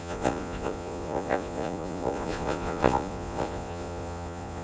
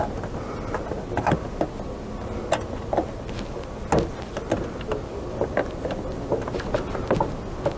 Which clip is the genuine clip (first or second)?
second